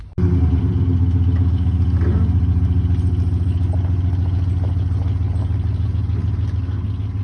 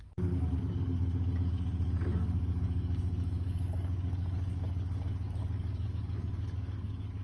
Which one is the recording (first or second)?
first